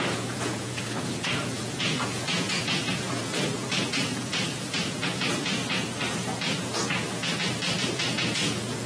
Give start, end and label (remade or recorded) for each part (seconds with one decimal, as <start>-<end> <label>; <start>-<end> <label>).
0.0-5.6 remade; 5.6-6.6 recorded; 6.6-7.2 remade; 7.2-7.8 recorded; 7.8-8.9 remade